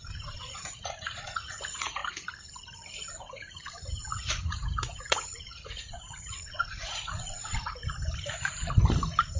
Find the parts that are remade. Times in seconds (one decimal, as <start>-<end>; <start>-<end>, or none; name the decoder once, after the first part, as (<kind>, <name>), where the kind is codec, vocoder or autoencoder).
0.0-2.0 (vocoder, Vocos); 3.2-7.8